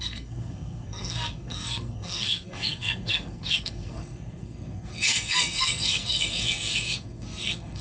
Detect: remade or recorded remade